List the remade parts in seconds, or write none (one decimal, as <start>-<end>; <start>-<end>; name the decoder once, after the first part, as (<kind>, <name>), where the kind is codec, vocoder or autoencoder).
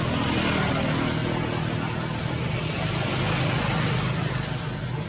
none